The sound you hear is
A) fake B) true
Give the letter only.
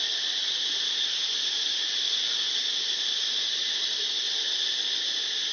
B